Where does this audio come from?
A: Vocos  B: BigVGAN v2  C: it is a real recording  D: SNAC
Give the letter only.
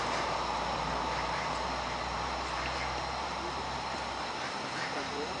B